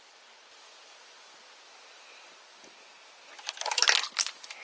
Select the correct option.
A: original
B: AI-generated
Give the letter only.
A